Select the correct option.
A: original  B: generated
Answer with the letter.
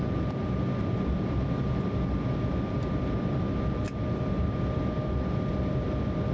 A